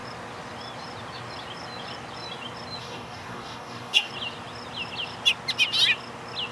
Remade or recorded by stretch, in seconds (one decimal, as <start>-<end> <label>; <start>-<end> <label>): 0.0-2.8 recorded; 2.8-4.1 remade; 4.1-6.5 recorded